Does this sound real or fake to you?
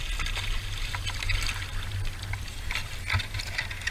real